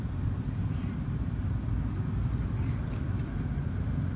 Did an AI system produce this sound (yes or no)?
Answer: no